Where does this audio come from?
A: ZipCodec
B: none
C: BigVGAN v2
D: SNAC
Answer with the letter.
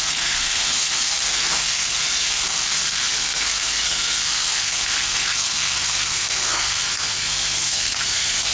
D